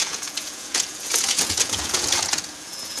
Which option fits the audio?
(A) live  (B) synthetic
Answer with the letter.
B